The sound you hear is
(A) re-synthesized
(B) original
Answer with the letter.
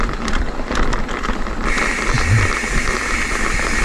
B